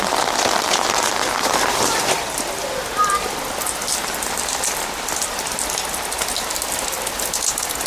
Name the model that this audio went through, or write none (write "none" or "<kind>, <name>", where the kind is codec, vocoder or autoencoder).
none